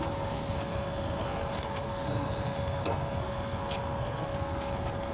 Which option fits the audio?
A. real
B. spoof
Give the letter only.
B